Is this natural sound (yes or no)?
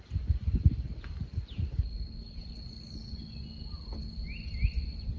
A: yes